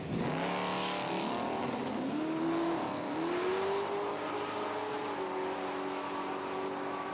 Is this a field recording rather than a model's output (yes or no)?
yes